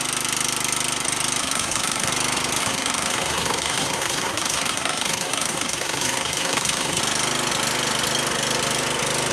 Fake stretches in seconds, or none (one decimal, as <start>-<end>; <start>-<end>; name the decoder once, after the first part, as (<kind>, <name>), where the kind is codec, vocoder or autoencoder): 1.4-2.1 (codec, SNAC); 2.6-7.0